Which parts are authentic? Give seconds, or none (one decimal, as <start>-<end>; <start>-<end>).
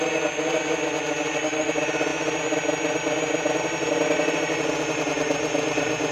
0.0-6.1